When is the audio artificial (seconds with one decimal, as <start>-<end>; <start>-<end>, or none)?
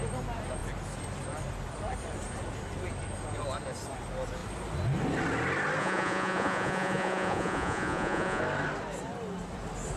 5.8-8.4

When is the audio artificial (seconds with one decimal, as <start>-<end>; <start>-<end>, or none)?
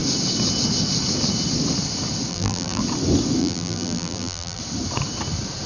2.3-2.8; 3.4-4.6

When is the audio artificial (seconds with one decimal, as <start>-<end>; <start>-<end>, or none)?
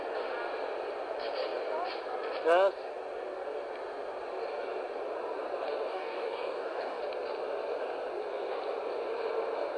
5.9-7.0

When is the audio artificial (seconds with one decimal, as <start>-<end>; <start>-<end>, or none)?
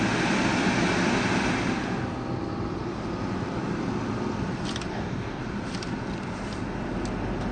4.9-5.4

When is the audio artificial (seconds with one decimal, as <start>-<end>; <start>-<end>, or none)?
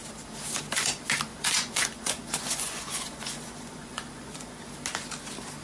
1.3-4.7